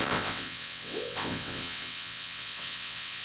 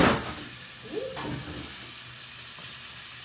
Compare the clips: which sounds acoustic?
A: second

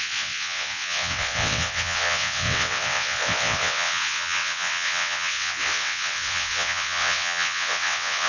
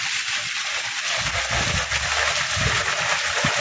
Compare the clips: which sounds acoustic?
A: second